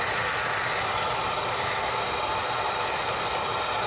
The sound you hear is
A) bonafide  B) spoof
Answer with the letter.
A